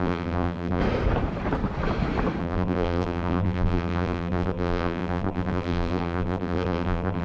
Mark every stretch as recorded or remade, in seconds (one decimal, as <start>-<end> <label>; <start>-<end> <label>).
0.0-0.8 remade; 0.8-2.4 recorded; 2.4-7.2 remade